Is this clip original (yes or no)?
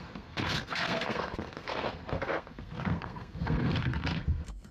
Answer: no